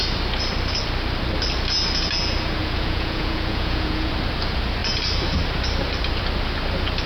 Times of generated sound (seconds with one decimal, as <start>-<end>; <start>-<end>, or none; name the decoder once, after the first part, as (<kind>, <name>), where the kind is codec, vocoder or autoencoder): 2.6-4.1 (vocoder, Vocos)